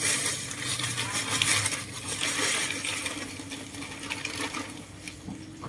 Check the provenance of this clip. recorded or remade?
recorded